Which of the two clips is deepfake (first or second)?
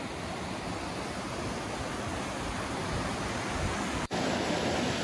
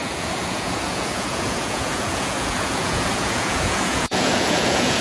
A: second